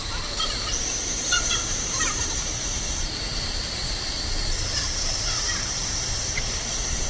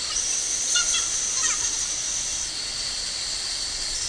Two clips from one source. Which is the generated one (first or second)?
first